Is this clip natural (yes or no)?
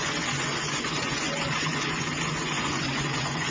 no